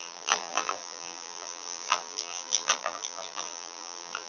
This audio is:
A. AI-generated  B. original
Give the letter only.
A